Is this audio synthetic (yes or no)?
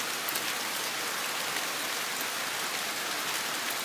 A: no